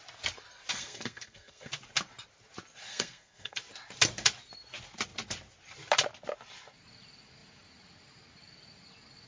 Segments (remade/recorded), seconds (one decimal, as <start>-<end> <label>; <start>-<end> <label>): 0.0-0.7 recorded; 0.7-1.7 remade; 1.7-2.9 recorded; 2.9-3.6 remade; 3.6-9.3 recorded